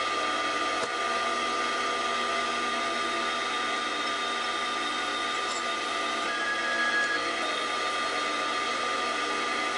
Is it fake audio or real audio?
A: real